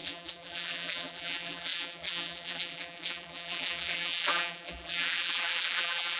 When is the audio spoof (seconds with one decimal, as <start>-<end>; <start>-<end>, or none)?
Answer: 0.0-6.2